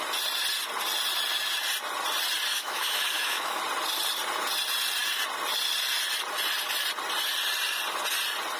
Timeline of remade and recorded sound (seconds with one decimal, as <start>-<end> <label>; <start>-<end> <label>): 0.0-2.5 recorded; 2.5-3.6 remade; 3.6-8.6 recorded